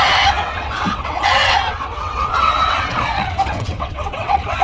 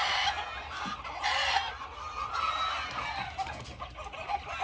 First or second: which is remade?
first